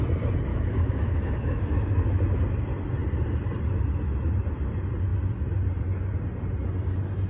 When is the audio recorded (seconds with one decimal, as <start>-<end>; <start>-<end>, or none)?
0.0-0.5; 2.4-7.3